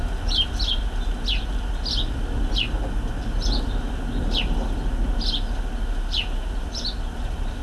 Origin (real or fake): real